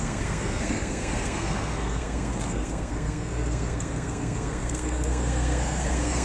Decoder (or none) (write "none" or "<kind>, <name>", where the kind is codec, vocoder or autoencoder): codec, SNAC